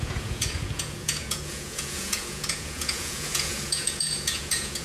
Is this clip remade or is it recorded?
remade